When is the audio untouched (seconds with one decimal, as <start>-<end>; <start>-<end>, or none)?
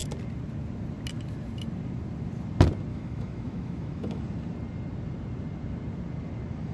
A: 0.0-2.9; 4.2-6.7